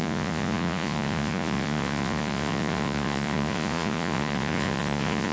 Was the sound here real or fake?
fake